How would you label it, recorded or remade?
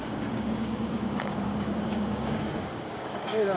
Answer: remade